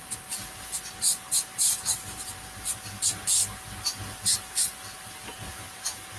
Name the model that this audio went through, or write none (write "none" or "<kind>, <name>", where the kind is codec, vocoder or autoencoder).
none